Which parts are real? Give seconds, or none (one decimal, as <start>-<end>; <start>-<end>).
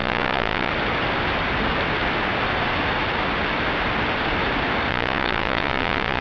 0.7-4.9